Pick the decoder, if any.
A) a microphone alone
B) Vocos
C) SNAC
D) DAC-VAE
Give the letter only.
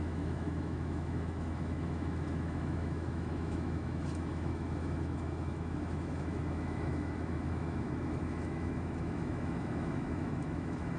D